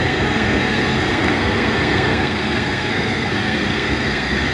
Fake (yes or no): yes